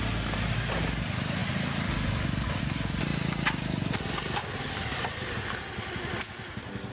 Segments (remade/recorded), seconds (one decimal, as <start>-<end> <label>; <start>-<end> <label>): 0.0-6.9 recorded